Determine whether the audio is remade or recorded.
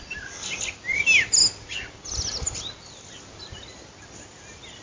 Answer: recorded